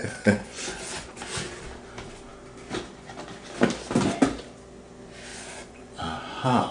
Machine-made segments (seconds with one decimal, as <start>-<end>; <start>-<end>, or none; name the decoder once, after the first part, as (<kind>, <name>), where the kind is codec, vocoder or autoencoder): 0.0-1.2 (vocoder, Vocos); 5.3-6.7

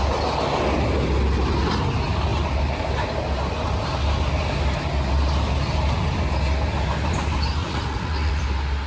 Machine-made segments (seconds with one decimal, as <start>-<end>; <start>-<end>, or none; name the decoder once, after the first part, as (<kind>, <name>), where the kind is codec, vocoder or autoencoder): 7.6-8.4 (vocoder, Vocos)